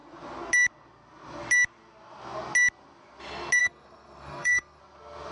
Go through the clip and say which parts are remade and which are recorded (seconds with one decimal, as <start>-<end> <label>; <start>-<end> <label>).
0.0-3.6 recorded; 3.6-4.8 remade; 4.8-5.3 recorded